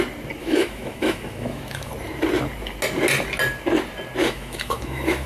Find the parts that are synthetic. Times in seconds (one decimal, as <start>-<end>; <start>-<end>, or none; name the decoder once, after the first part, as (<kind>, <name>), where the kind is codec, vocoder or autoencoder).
0.4-1.9 (autoencoder, DAC-VAE); 4.2-5.3